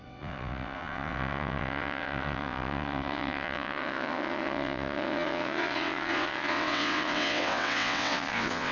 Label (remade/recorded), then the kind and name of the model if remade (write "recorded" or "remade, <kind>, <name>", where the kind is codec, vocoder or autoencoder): remade, vocoder, WaveNeXt